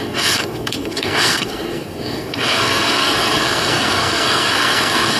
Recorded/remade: remade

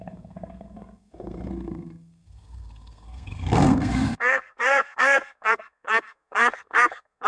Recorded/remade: remade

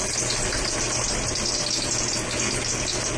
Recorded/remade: recorded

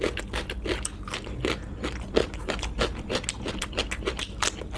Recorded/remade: recorded